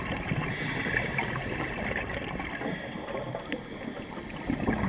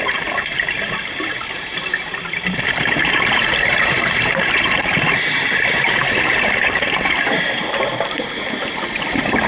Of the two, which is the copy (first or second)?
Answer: second